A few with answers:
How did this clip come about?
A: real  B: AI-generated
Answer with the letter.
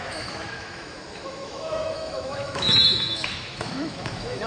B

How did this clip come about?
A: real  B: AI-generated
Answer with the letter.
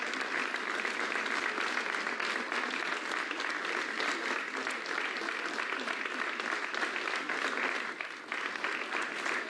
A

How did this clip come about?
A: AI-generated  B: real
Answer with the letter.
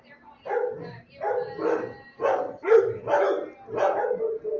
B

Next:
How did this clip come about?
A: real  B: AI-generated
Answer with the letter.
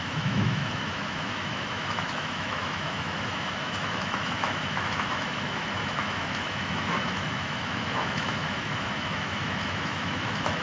B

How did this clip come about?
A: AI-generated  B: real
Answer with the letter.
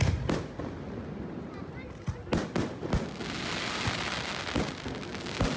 B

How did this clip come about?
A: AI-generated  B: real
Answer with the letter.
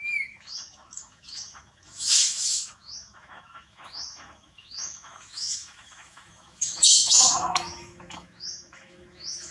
A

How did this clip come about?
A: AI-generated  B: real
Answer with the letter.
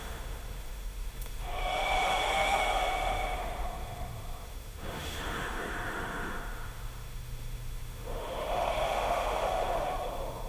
A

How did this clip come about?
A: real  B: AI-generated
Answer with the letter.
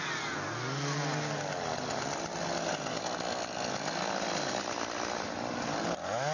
A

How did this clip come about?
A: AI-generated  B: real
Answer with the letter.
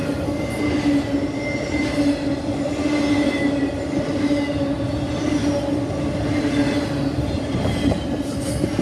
B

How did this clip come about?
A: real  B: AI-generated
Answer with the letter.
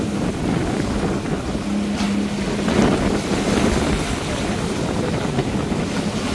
A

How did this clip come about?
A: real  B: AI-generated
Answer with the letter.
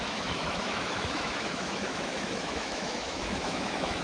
B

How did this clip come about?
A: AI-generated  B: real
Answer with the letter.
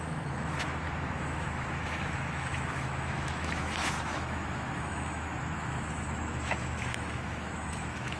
A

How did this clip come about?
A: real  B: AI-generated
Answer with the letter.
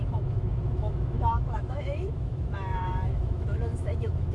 B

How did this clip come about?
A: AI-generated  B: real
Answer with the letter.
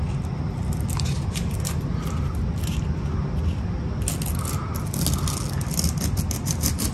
B